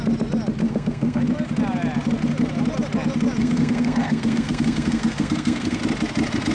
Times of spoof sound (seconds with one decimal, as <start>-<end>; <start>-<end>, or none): 0.6-1.2; 3.4-5.8